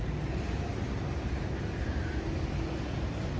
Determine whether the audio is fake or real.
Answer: real